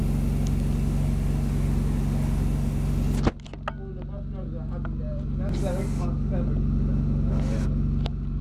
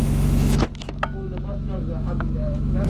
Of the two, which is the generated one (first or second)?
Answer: second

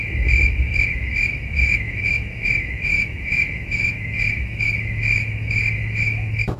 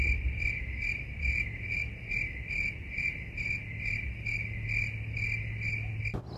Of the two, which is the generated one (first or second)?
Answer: first